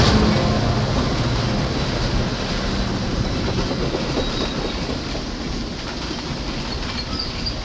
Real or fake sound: real